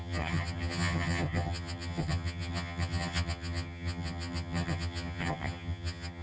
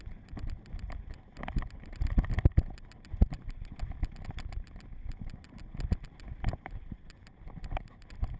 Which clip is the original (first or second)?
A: second